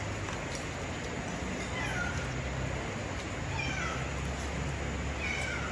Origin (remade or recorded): recorded